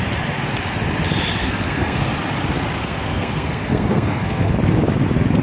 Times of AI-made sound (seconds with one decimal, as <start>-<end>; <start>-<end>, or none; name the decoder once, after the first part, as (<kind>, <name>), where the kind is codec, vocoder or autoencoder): 1.4-2.1 (codec, SNAC); 2.8-4.5

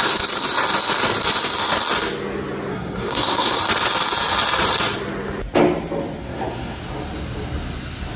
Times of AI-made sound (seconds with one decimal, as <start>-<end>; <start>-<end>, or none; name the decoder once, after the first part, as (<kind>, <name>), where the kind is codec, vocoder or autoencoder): 2.7-3.6 (codec, SNAC); 6.2-6.8

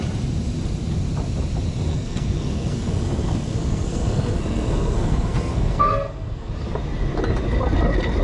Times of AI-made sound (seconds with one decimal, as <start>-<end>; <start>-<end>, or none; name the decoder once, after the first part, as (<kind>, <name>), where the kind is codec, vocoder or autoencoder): 1.9-6.5 (codec, SNAC)

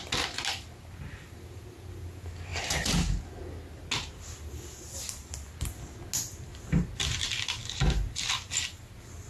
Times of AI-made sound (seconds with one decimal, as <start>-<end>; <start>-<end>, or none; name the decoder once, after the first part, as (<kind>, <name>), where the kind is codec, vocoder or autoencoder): none

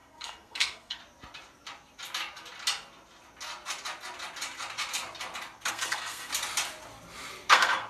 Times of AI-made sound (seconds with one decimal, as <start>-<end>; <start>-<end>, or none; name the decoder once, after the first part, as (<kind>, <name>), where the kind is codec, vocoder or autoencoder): 0.0-1.0 (codec, SNAC); 5.7-6.3; 7.5-7.9

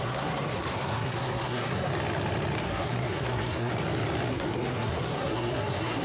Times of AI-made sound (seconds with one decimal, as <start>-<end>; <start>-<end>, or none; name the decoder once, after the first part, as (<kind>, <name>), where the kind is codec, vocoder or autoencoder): 0.0-1.9 (codec, SNAC); 2.6-3.7; 4.3-6.0

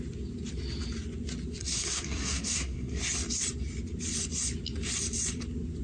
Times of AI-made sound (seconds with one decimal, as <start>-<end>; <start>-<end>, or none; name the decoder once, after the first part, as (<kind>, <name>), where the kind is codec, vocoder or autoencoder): 1.6-3.0 (codec, SNAC)

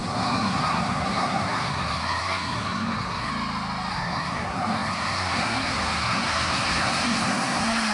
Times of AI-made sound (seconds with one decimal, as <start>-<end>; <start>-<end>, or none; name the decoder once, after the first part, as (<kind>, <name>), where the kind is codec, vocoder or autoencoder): 0.0-3.3 (codec, SNAC); 3.9-7.9